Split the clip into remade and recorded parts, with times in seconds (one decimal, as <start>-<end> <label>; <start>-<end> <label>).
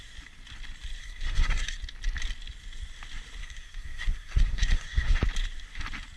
0.0-1.0 recorded; 1.0-1.8 remade; 1.8-3.4 recorded; 3.4-5.2 remade; 5.2-6.2 recorded